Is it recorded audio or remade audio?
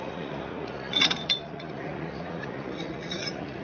remade